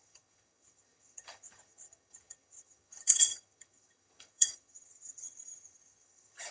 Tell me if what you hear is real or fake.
fake